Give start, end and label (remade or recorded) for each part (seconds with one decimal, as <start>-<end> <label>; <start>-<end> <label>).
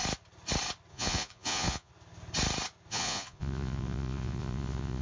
0.0-0.9 recorded; 0.9-1.9 remade; 1.9-2.9 recorded; 2.9-5.0 remade